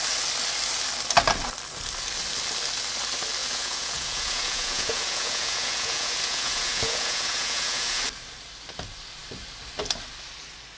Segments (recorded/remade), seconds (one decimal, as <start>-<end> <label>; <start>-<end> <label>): 0.0-3.4 recorded; 3.4-8.0 remade; 8.0-10.8 recorded